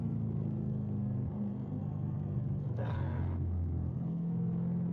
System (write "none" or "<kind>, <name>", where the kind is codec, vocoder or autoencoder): codec, SNAC